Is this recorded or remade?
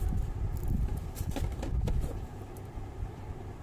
recorded